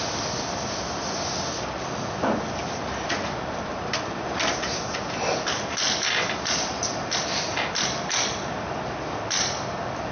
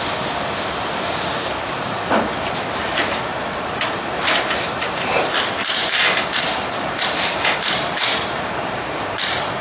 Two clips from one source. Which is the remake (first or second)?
second